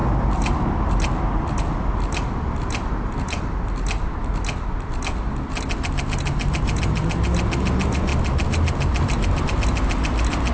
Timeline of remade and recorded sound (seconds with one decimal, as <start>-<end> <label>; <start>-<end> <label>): 0.0-1.6 remade; 1.6-10.5 recorded